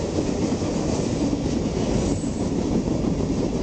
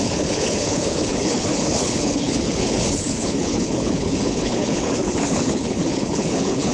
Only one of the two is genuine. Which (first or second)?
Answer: first